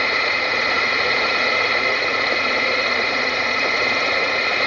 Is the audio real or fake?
fake